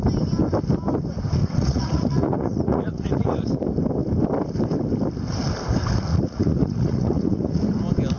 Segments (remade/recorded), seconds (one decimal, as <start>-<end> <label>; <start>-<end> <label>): 0.0-1.4 recorded; 1.4-3.5 remade; 3.5-6.1 recorded; 6.1-7.6 remade; 7.6-8.2 recorded